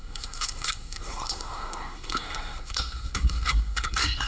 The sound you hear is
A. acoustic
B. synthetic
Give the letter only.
B